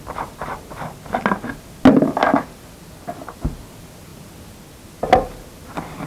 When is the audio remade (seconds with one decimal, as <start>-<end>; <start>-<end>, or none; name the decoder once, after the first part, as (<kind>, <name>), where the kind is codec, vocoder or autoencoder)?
none